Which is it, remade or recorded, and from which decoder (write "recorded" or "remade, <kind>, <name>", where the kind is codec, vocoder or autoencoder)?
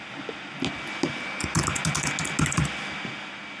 recorded